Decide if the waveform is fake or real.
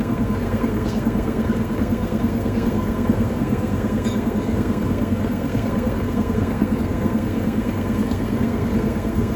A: fake